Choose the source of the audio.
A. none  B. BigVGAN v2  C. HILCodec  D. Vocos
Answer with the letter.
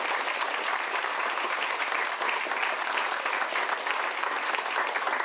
A